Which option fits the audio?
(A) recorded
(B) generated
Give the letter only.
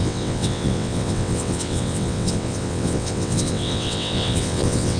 B